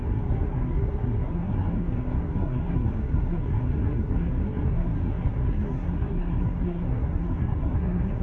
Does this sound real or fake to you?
fake